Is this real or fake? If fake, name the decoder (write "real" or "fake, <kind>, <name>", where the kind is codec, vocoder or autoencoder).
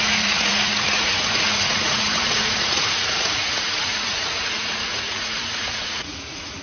fake, vocoder, Vocos